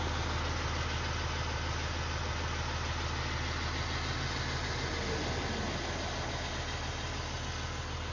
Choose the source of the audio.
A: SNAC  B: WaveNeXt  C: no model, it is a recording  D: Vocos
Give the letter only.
C